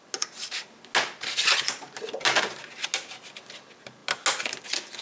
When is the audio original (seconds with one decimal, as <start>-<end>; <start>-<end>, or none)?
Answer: 0.0-5.0